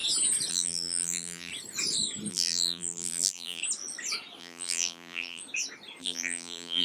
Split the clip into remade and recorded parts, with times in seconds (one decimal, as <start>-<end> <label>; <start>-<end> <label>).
0.0-0.5 recorded; 0.5-1.5 remade; 1.5-2.3 recorded; 2.3-3.6 remade; 3.6-4.4 recorded; 4.4-5.4 remade; 5.4-6.0 recorded; 6.0-6.8 remade